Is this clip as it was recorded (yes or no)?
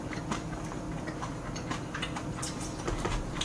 yes